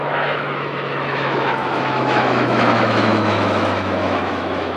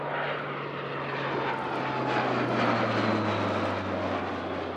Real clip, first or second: second